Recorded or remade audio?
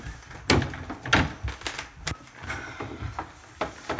recorded